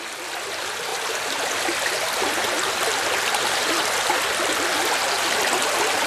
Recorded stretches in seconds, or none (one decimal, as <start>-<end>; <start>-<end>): 0.0-6.1